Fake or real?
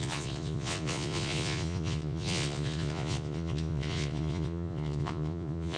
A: fake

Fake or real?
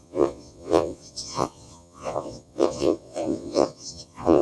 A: fake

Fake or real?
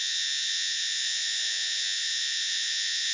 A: fake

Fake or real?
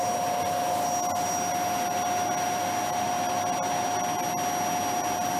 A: real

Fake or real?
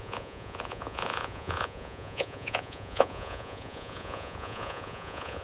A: fake